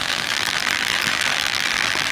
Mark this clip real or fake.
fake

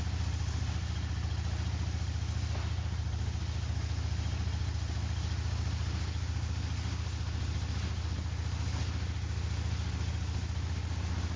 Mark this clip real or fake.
real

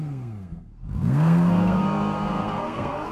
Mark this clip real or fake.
fake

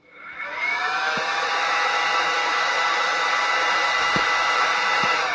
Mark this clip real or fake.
fake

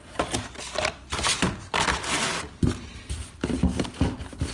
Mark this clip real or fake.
real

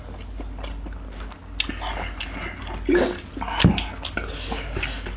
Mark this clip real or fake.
real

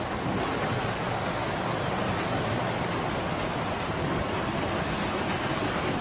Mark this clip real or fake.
real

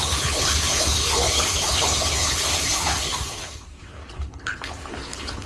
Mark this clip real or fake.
fake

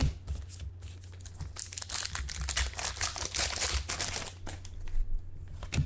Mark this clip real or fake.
real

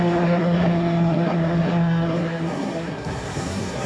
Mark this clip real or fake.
fake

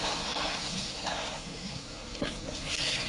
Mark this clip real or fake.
fake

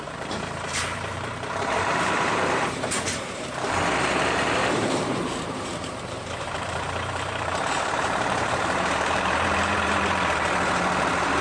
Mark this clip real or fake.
fake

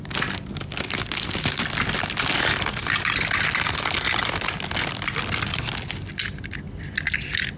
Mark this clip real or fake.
real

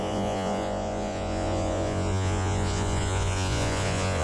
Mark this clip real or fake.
fake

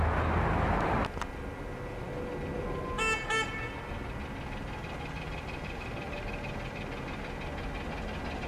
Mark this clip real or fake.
real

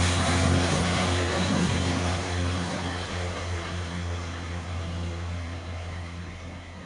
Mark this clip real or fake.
fake